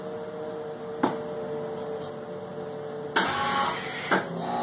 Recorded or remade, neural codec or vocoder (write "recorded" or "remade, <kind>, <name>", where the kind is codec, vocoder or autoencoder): recorded